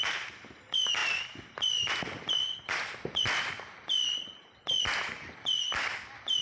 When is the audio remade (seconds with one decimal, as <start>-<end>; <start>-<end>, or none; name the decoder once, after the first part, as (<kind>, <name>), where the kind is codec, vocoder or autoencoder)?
none